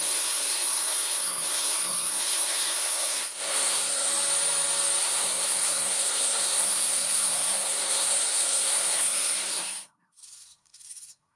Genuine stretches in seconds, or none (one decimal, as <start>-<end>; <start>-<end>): 4.1-5.0